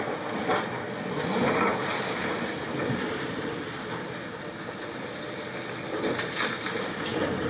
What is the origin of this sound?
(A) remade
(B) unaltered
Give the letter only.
B